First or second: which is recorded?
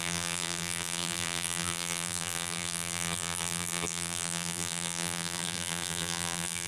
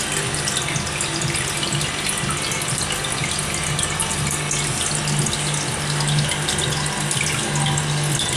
second